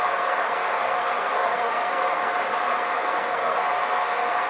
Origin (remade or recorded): remade